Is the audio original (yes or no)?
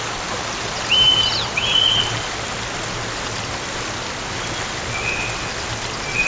yes